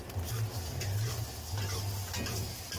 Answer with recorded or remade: recorded